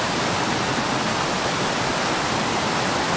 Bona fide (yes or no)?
yes